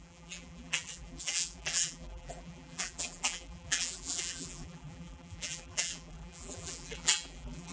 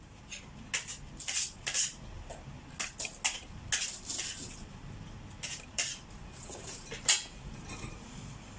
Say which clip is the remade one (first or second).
first